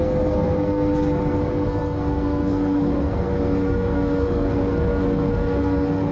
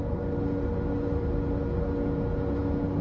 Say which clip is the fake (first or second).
first